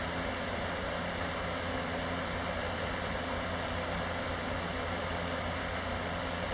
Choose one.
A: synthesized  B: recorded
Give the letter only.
B